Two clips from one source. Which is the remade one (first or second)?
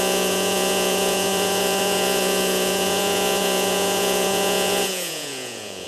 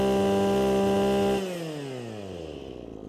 first